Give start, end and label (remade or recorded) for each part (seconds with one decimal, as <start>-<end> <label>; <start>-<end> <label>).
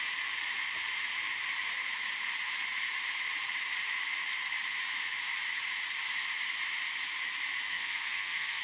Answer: 0.0-7.7 recorded; 7.7-8.6 remade